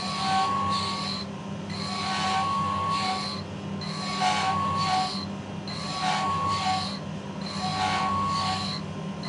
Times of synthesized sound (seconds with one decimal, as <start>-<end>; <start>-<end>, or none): none